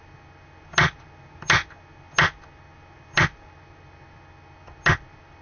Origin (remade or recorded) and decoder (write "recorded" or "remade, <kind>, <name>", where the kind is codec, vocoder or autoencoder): recorded